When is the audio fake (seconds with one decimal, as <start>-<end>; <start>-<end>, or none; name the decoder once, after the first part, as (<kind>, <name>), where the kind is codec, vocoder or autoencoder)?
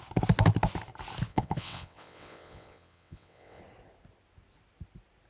1.3-3.6 (vocoder, WaveNeXt)